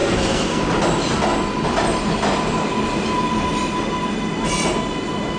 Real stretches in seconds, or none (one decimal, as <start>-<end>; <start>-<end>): 0.6-5.4